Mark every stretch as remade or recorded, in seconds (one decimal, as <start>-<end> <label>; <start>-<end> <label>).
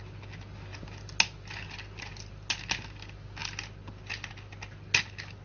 0.0-5.4 recorded